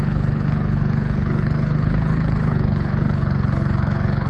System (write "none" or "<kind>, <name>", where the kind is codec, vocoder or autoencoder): codec, HILCodec